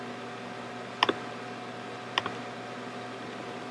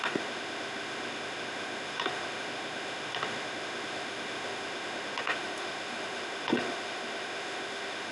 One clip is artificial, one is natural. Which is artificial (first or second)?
second